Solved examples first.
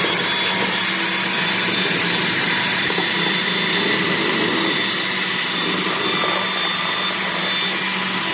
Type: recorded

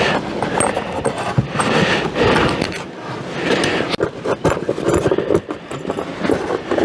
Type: recorded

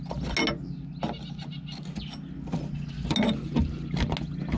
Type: recorded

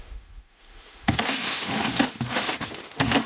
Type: remade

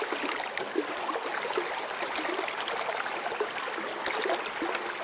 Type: recorded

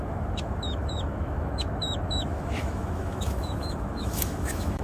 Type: remade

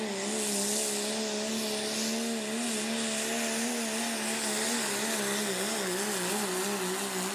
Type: recorded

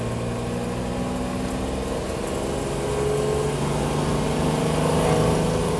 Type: recorded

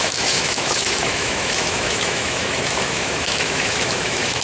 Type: remade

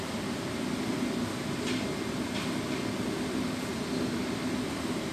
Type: recorded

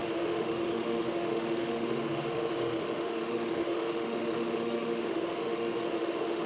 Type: remade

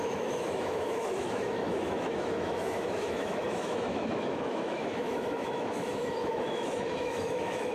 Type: remade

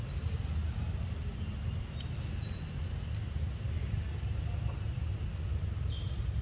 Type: recorded